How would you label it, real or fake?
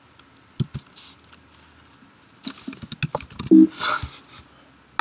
real